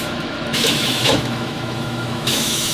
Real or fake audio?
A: fake